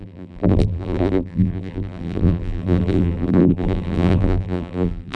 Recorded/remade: remade